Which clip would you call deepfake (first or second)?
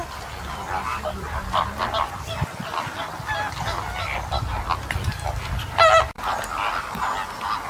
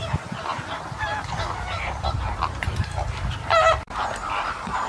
second